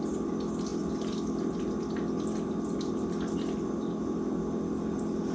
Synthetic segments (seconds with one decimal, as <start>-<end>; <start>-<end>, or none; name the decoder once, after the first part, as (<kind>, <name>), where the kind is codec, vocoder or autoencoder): none